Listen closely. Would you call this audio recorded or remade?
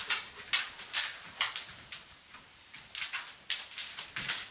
recorded